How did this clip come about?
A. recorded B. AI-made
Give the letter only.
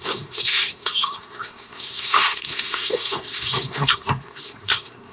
B